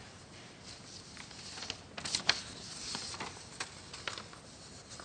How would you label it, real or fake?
real